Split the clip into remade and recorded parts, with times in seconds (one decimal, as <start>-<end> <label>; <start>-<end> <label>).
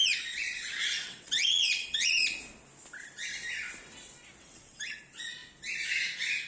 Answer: 0.0-0.8 recorded; 0.8-2.1 remade; 2.1-4.4 recorded; 4.4-5.0 remade; 5.0-6.5 recorded